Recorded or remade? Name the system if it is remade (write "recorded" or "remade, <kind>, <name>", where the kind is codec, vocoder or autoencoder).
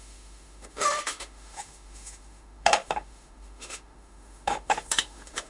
remade, autoencoder, DAC-VAE